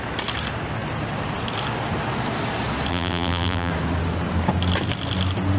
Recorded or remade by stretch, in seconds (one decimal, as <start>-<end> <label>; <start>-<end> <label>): 0.0-2.9 recorded; 2.9-3.7 remade; 3.7-5.6 recorded